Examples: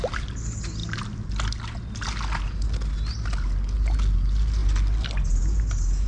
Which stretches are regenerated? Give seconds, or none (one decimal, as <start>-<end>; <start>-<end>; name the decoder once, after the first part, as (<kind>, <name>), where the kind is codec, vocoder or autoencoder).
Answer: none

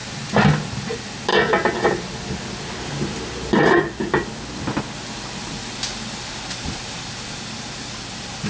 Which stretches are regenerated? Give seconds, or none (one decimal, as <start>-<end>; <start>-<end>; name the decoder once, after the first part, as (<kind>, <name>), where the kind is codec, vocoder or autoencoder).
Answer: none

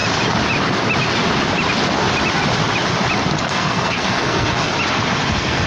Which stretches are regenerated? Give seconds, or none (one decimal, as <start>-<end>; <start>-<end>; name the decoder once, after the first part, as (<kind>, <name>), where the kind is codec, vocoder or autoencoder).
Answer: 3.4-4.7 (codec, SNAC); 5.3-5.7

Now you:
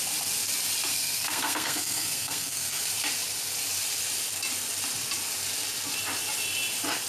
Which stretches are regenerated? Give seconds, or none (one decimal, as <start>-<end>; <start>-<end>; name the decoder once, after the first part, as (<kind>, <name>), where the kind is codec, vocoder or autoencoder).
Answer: 0.9-2.8 (codec, SNAC)